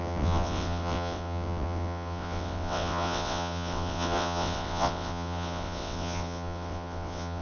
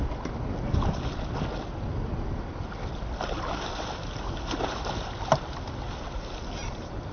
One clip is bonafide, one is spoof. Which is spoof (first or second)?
first